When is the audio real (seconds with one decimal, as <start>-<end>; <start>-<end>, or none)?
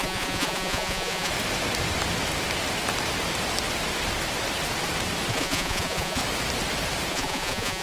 1.3-5.3; 6.2-7.1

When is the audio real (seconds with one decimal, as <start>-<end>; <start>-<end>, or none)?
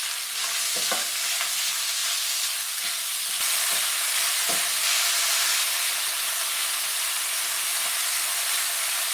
0.0-9.1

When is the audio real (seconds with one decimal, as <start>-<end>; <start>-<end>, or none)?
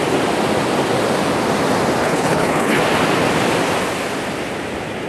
0.0-2.0; 2.8-5.1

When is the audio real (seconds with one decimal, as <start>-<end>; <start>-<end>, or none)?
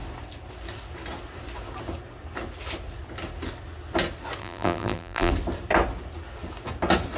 0.0-4.4; 5.3-7.2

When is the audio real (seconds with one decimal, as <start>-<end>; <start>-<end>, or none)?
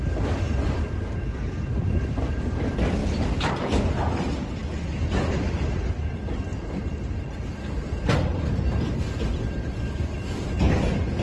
0.0-3.0; 3.7-4.6; 5.9-6.5; 10.5-11.2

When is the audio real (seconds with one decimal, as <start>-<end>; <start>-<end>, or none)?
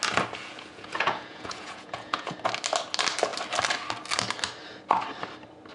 0.0-0.5; 2.3-5.7